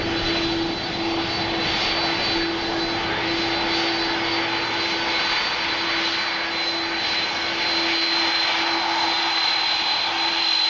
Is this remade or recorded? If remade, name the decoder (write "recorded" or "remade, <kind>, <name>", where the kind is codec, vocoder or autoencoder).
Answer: recorded